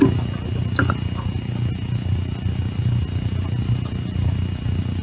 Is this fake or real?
real